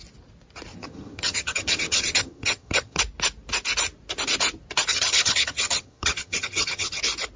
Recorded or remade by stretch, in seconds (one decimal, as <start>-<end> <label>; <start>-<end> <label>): 0.0-0.7 recorded; 0.7-3.0 remade; 3.0-4.9 recorded; 4.9-7.0 remade; 7.0-7.4 recorded